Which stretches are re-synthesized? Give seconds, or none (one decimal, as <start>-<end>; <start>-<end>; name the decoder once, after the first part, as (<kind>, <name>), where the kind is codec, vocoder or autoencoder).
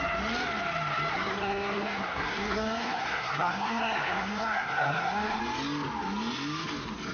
1.1-5.4 (codec, SNAC)